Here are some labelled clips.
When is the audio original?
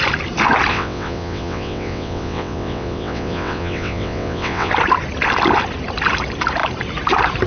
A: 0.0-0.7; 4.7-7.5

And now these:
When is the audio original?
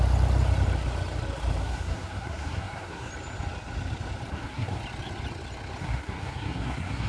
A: 0.0-1.6; 3.1-4.3; 4.8-5.8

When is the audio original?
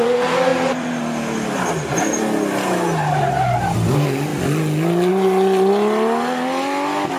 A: 0.0-0.5; 1.0-7.2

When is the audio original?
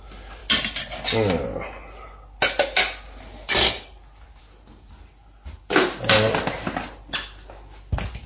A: 0.0-8.3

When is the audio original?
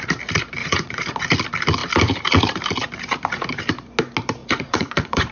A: 0.0-0.6; 1.1-4.4